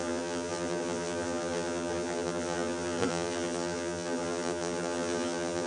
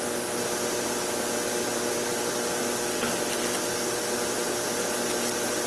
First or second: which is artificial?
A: first